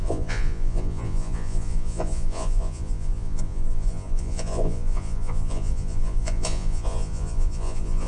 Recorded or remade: remade